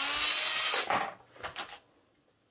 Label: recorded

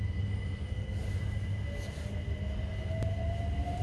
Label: recorded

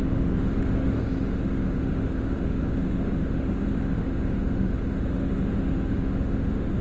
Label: remade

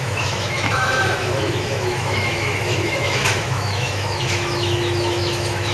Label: remade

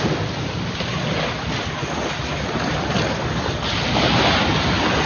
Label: recorded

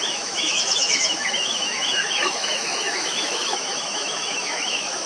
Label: remade